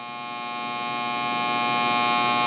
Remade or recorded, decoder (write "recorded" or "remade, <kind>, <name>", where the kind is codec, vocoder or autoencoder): recorded